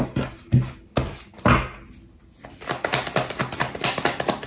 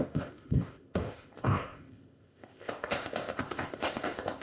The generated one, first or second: second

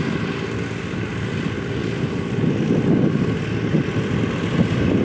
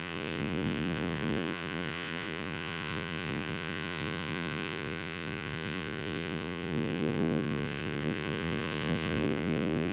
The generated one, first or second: second